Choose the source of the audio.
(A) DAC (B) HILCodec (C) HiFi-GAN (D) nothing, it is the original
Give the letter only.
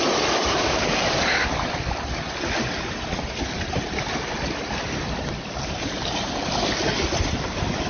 D